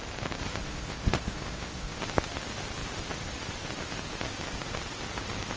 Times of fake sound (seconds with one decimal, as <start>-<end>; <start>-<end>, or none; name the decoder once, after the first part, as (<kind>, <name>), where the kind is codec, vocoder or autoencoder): 0.6-2.0 (codec, ZipCodec)